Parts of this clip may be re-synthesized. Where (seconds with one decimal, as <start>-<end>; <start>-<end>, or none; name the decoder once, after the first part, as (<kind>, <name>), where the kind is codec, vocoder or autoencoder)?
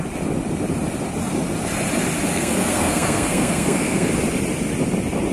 2.3-4.1 (codec, SNAC)